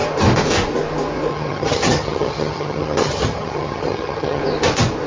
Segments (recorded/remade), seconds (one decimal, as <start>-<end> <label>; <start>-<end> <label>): 0.0-1.3 recorded; 1.3-4.4 remade; 4.4-5.1 recorded